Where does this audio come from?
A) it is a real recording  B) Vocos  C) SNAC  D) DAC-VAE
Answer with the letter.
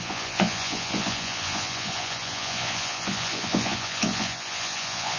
B